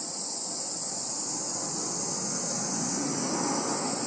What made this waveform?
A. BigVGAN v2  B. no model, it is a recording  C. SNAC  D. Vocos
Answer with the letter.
D